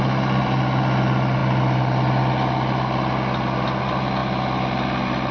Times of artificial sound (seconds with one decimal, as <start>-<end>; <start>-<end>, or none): none